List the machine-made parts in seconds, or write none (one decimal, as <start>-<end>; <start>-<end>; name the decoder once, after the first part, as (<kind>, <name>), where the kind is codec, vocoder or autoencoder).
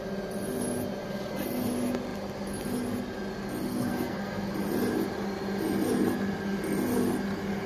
3.7-4.5 (codec, SNAC)